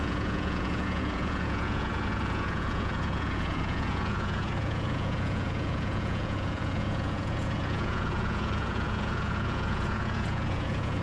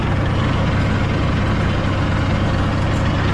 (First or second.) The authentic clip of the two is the second